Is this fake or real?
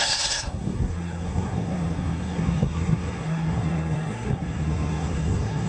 fake